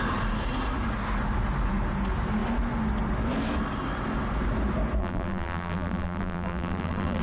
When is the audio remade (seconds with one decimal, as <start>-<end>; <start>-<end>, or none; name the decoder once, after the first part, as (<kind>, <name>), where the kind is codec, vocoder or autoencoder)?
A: 5.0-7.2 (vocoder, BigVGAN v2)

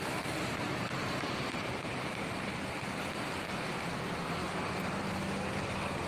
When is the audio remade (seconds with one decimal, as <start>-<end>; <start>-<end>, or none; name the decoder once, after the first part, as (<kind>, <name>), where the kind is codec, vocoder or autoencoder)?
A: 0.7-3.7 (vocoder, BigVGAN v2); 4.4-5.1